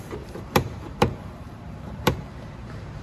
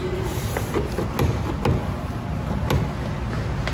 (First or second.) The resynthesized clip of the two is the first